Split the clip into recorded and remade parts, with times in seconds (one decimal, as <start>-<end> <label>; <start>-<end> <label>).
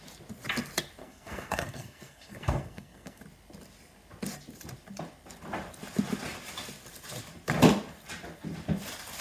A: 0.0-1.0 recorded; 1.0-3.2 remade; 3.2-9.2 recorded